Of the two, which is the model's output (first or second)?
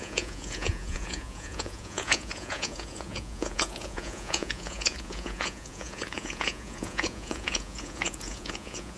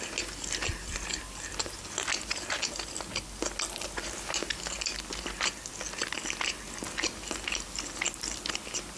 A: first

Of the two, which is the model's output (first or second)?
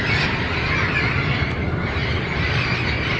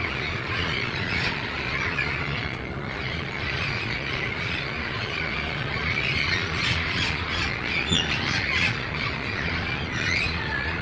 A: second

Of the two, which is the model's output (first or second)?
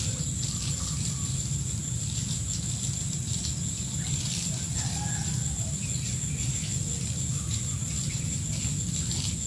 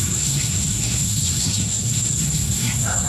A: second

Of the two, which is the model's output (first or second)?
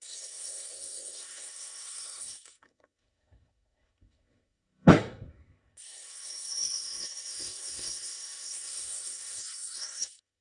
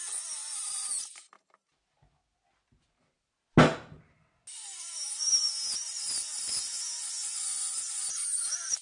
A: first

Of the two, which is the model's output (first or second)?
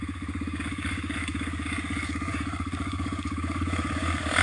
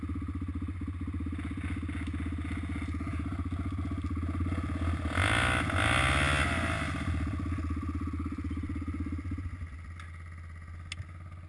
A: first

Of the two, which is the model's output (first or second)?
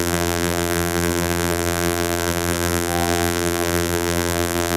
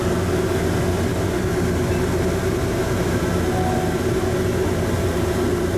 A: first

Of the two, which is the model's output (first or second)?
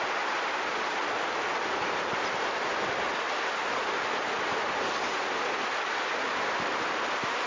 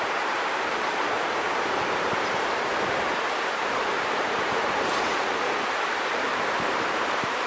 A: second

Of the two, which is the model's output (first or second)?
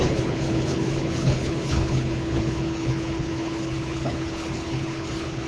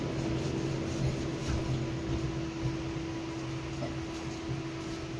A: first